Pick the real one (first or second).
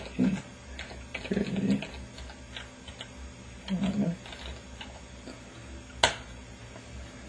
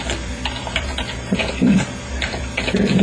first